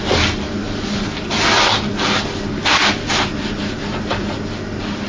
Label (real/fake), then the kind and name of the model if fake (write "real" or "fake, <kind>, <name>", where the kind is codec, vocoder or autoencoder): real